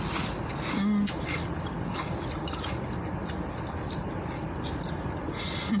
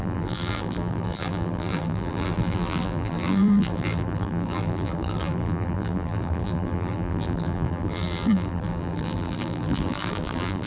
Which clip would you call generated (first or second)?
second